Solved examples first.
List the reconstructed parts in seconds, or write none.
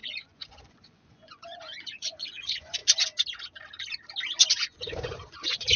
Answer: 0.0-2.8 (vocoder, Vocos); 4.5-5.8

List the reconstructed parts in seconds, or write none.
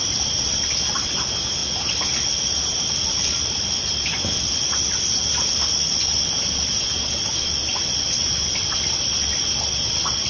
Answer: none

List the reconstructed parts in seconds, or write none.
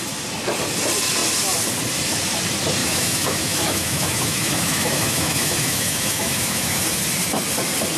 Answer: 2.8-6.8 (autoencoder, DAC-VAE)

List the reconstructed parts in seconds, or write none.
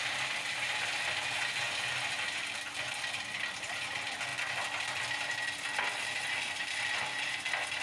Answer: none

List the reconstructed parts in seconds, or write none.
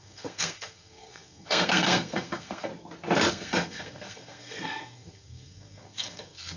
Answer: 0.0-2.7 (codec, SNAC); 3.3-6.6